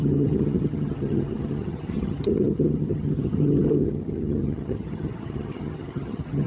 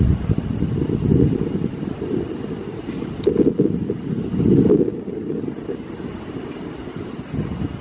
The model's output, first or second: first